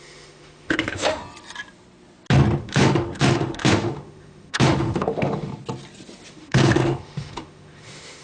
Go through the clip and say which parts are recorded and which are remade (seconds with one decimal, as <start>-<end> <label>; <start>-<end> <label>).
0.0-1.2 remade; 1.2-2.6 recorded; 2.6-5.5 remade; 5.5-6.3 recorded; 6.3-8.2 remade